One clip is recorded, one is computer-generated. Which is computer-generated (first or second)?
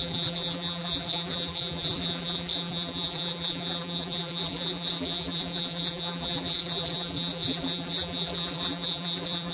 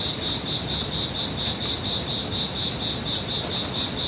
first